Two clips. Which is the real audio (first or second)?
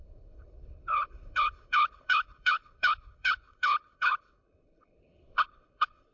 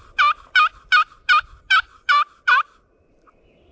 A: second